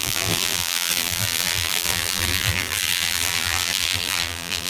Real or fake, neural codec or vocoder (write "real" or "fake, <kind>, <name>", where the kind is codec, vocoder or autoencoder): fake, vocoder, BigVGAN v2